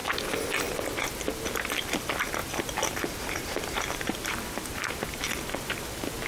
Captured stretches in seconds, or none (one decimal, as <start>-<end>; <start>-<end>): 0.0-2.4; 5.0-6.3